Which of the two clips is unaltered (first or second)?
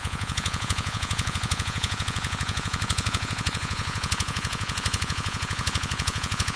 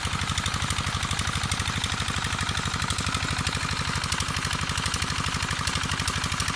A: second